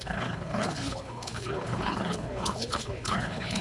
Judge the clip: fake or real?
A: fake